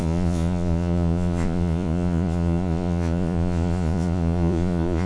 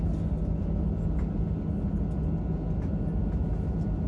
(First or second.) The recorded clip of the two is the second